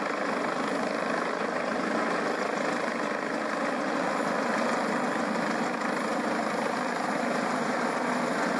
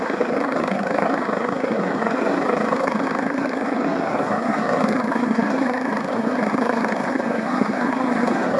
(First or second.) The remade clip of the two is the second